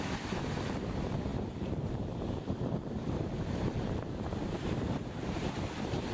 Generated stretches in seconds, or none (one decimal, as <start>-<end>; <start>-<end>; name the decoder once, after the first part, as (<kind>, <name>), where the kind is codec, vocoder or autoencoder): 0.0-6.1 (vocoder, BigVGAN v2)